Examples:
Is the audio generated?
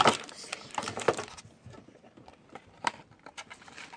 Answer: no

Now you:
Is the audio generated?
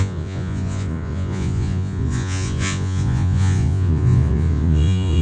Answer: yes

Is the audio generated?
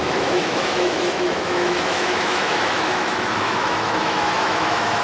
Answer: yes